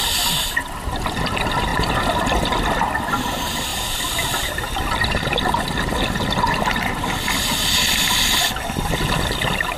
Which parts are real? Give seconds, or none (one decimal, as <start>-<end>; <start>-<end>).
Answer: 0.0-3.7; 8.6-9.8